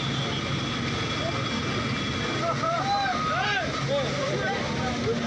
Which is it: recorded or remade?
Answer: recorded